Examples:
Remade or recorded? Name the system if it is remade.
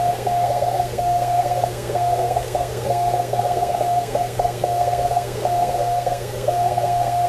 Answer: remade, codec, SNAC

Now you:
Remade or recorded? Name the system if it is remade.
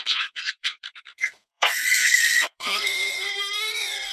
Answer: remade, codec, SNAC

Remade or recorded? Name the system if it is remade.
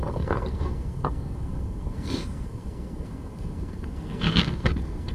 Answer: remade, codec, SNAC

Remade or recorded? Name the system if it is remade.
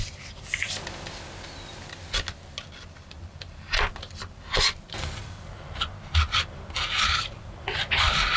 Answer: recorded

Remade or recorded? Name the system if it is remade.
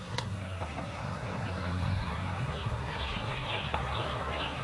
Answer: remade, codec, SNAC